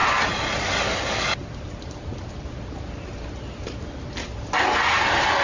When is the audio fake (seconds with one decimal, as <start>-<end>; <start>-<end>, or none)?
none